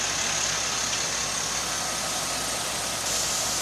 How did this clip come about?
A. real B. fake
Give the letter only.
A